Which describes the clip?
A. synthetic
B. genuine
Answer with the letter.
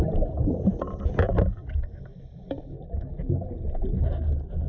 B